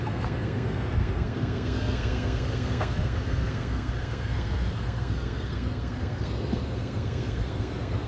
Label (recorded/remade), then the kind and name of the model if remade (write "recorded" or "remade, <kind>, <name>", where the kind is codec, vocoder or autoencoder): remade, codec, SNAC